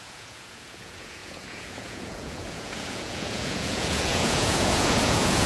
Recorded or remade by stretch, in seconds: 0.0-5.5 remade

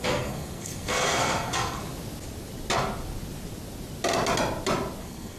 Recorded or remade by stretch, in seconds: 0.0-1.8 remade; 1.8-5.0 recorded; 5.0-5.4 remade

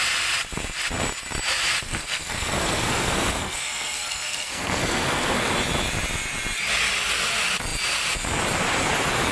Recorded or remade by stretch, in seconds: 0.0-1.8 recorded; 1.8-5.5 remade; 5.5-9.3 recorded